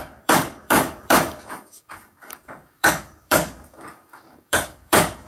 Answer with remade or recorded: remade